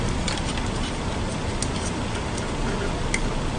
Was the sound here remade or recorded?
recorded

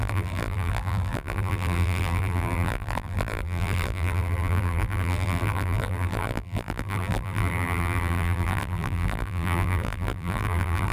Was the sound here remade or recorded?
remade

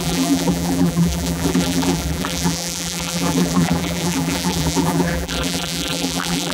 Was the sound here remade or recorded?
remade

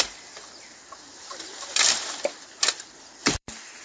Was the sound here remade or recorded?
remade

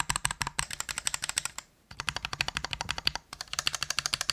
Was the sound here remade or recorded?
remade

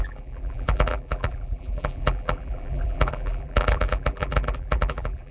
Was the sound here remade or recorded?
remade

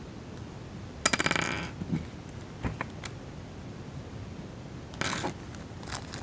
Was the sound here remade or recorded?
recorded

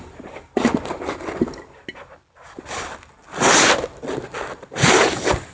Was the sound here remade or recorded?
recorded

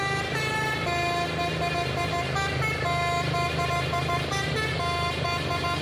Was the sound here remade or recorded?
recorded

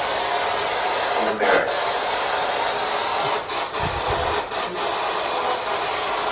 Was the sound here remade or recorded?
recorded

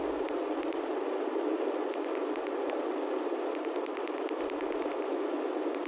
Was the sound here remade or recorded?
recorded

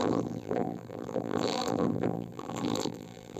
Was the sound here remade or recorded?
remade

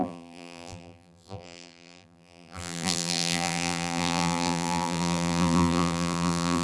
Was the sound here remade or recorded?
remade